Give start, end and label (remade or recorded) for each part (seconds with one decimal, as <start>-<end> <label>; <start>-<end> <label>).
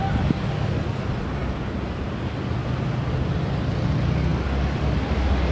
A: 0.0-5.5 recorded